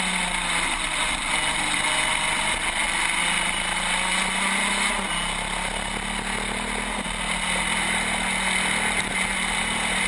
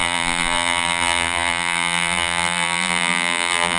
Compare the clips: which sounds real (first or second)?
first